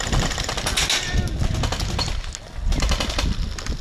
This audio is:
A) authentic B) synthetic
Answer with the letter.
A